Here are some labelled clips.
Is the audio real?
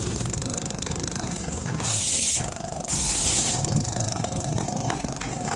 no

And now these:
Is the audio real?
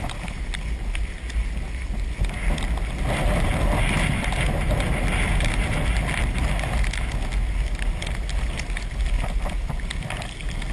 yes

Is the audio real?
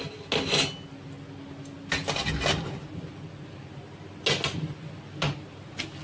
yes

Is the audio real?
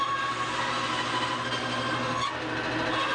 yes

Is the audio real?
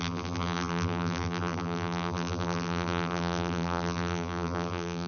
no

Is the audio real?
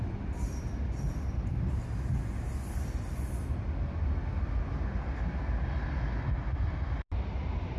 yes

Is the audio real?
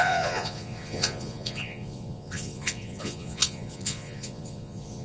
no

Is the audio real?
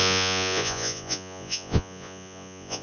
no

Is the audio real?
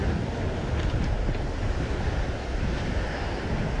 yes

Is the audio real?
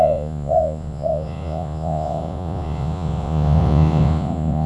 no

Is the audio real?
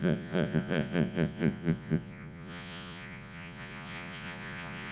no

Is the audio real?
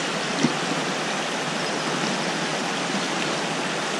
yes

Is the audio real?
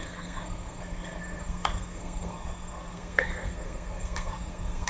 no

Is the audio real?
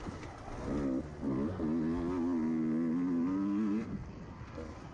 yes